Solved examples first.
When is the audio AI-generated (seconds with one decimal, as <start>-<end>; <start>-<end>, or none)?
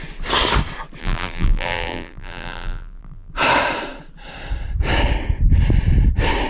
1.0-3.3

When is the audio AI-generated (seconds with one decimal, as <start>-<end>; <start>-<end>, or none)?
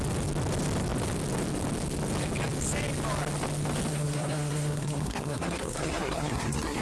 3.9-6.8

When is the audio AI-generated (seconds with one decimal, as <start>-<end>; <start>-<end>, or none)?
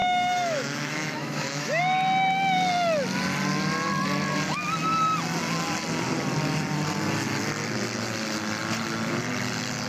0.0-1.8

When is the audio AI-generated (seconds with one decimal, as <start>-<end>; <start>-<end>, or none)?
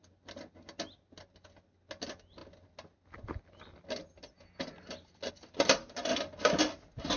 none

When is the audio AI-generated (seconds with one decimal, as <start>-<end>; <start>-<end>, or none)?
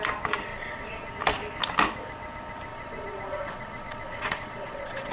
0.5-1.1; 2.7-5.1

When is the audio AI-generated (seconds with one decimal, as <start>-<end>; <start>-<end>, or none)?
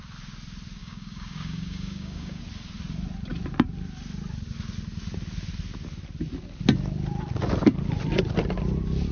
0.8-2.4